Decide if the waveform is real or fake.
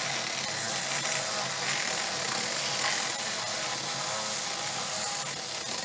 real